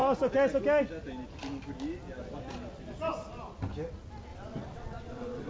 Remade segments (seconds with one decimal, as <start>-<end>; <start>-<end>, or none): 4.3-5.5